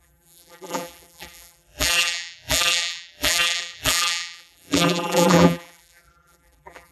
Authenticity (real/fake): fake